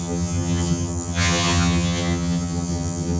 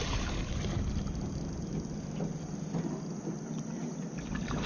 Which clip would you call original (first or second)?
second